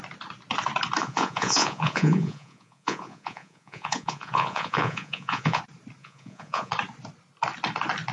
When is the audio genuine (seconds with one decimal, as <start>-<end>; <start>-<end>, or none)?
0.0-1.0; 5.6-6.0; 6.7-8.1